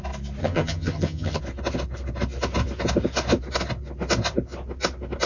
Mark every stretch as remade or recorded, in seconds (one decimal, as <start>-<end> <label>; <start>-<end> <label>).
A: 0.0-0.4 recorded; 0.4-1.4 remade; 1.4-5.3 recorded